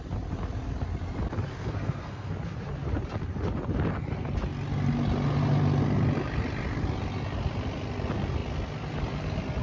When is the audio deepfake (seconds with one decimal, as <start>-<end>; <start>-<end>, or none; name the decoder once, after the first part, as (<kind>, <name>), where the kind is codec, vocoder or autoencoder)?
1.5-2.3 (codec, SNAC)